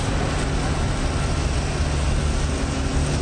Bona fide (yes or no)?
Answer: yes